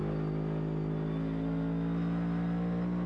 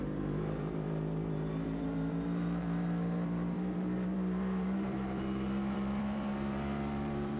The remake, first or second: second